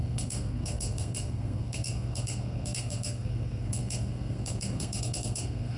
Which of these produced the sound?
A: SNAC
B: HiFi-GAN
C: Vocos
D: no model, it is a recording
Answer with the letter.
A